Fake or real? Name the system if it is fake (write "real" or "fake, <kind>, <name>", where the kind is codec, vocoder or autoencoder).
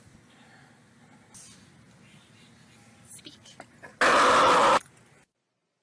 real